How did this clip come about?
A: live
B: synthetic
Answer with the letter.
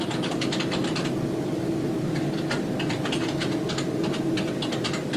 A